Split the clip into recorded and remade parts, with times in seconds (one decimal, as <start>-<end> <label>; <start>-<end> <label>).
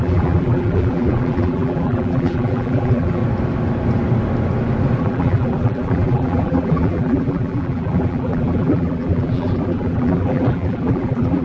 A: 0.0-3.2 remade; 3.2-5.0 recorded; 5.0-11.4 remade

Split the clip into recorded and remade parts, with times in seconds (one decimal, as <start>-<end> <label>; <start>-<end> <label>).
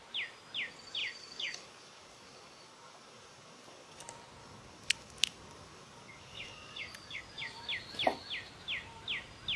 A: 0.0-1.0 recorded; 1.0-4.0 remade; 4.0-4.4 recorded; 4.4-7.2 remade; 7.2-9.6 recorded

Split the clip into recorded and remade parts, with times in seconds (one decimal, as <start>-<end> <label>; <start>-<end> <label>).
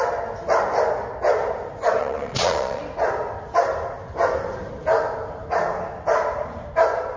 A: 0.0-2.0 recorded; 2.0-2.8 remade; 2.8-7.2 recorded